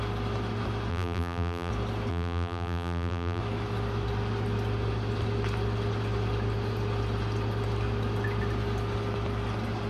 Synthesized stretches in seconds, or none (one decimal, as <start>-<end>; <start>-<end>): 0.9-1.7; 2.1-3.4